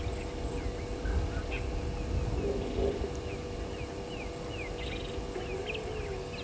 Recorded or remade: recorded